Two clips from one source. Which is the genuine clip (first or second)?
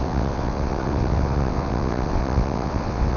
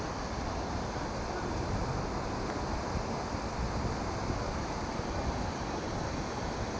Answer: second